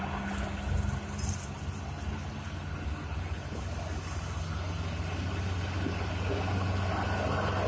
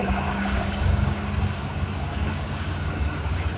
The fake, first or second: second